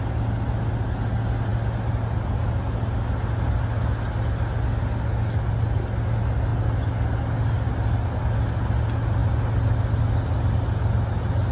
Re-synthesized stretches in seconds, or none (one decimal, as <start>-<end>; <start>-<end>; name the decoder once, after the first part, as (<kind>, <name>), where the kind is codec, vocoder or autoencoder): none